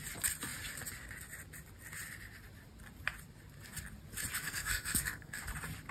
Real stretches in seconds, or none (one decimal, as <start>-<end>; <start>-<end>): 0.0-4.4; 5.4-5.9